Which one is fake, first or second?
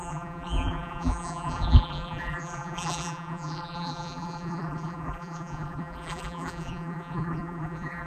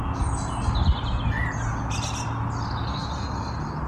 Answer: first